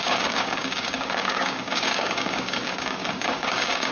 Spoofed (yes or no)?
yes